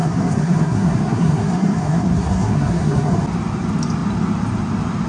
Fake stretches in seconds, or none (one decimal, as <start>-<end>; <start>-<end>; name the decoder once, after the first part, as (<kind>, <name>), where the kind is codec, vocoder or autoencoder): 0.0-3.1 (codec, SNAC)